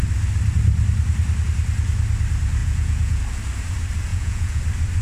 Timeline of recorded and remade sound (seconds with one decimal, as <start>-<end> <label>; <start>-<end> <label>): 0.0-2.6 recorded; 2.6-3.2 remade; 3.2-4.1 recorded; 4.1-4.6 remade; 4.6-5.0 recorded